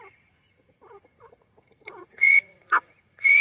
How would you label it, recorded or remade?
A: remade